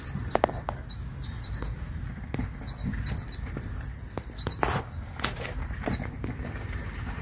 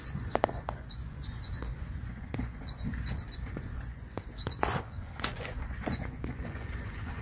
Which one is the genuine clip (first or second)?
first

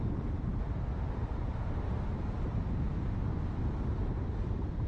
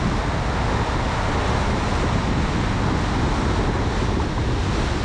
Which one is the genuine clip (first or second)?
second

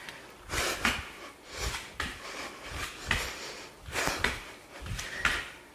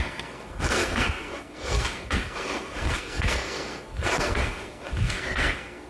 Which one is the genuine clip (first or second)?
first